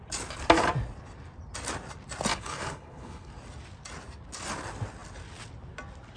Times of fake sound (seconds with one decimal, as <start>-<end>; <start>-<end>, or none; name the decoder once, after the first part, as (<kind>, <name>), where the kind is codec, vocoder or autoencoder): 2.3-3.3 (codec, HILCodec)